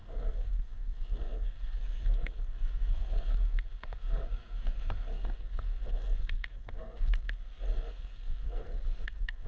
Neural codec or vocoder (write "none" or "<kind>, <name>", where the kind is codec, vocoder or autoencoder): codec, SNAC